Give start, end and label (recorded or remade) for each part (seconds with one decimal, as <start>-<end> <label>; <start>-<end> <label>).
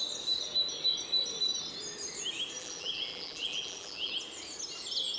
0.0-2.6 recorded; 2.6-4.1 remade; 4.1-5.2 recorded